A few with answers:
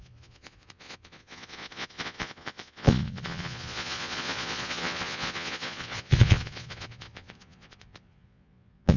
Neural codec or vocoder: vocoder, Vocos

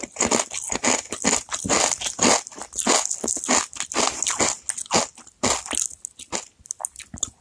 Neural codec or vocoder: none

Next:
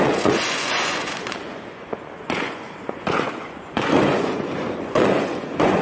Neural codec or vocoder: vocoder, Vocos